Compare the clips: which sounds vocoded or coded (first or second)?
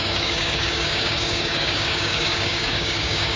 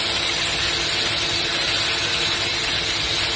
first